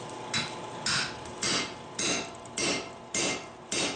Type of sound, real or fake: real